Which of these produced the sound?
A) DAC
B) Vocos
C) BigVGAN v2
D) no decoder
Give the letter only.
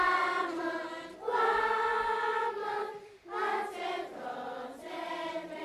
C